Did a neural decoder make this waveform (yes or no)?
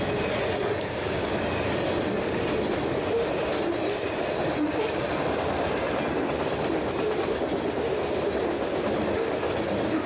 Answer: no